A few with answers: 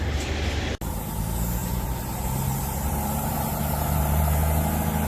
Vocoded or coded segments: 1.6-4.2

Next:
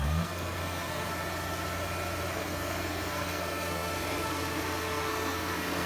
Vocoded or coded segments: 0.0-1.1; 2.3-5.9

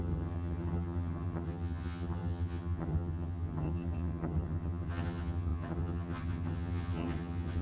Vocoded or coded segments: 0.0-7.6

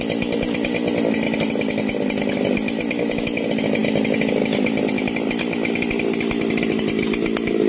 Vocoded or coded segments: none

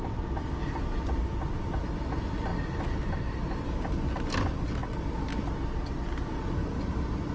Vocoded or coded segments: none

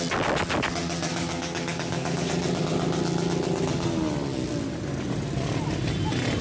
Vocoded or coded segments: 1.1-2.3